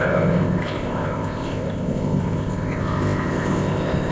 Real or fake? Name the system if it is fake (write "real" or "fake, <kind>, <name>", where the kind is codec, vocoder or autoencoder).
fake, codec, ZipCodec